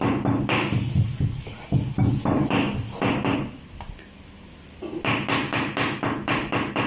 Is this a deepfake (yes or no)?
no